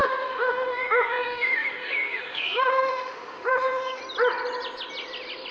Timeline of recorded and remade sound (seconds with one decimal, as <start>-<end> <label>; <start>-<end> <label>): 0.0-4.0 remade; 4.0-5.5 recorded